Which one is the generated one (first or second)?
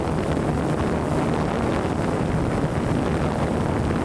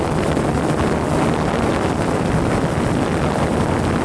second